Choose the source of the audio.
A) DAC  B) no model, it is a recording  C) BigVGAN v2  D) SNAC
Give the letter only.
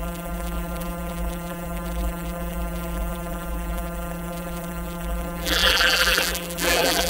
C